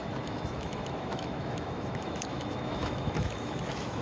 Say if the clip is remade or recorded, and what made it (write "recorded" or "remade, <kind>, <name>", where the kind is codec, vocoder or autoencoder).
remade, autoencoder, DAC-VAE